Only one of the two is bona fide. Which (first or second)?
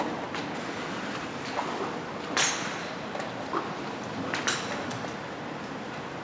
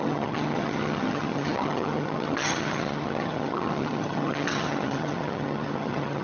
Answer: first